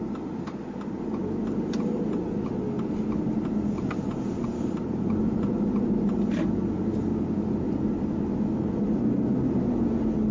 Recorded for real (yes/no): yes